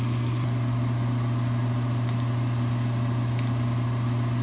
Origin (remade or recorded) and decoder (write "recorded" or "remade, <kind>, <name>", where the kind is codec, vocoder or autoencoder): recorded